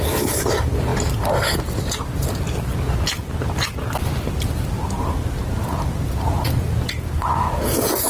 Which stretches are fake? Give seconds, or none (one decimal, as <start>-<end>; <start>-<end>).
none